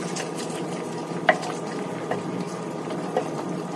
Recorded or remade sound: remade